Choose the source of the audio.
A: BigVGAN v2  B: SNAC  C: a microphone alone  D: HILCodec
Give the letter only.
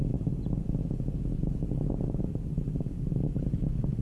C